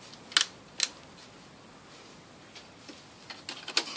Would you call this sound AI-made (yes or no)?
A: no